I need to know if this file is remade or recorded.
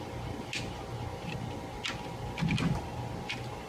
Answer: recorded